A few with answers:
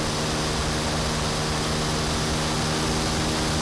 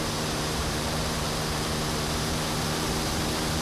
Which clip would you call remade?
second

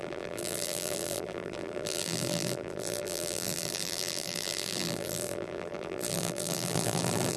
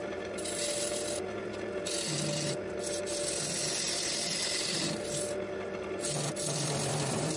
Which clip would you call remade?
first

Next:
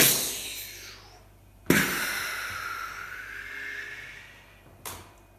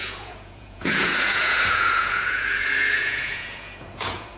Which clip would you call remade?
second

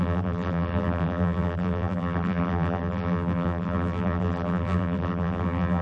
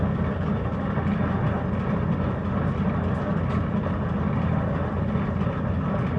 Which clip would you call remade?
first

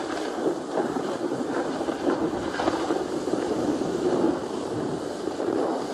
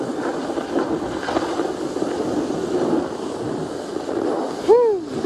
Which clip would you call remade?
first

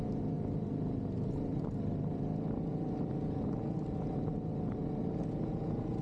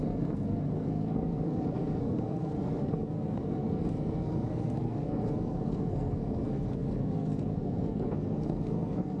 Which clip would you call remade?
second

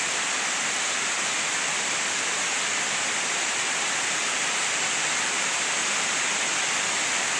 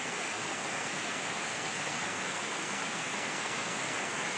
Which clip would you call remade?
second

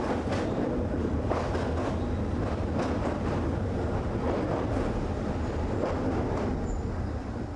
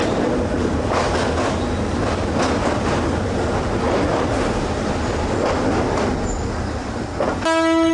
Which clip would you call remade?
first